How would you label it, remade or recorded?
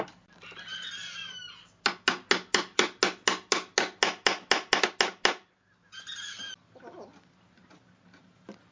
recorded